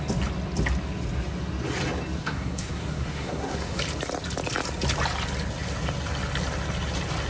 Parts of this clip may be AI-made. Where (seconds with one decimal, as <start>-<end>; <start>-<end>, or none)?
2.2-3.8